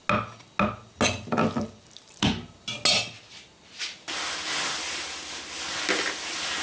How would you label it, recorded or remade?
recorded